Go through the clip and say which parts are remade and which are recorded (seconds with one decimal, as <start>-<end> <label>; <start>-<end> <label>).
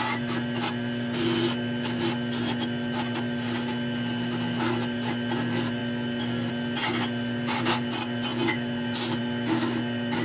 0.0-10.2 recorded